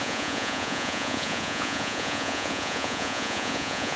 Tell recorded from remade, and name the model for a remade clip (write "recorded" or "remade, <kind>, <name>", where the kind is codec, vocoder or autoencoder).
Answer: remade, vocoder, Vocos